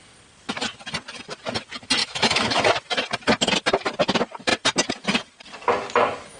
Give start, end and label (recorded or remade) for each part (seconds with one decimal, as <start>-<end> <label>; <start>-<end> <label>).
0.0-2.0 recorded; 2.0-2.6 remade; 2.6-6.4 recorded